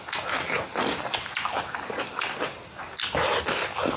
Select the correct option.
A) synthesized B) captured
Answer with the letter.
B